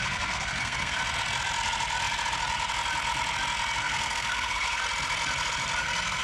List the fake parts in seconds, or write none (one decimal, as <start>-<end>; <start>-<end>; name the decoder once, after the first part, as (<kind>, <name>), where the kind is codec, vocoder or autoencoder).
0.0-1.0 (codec, SNAC); 3.8-4.8; 5.8-6.2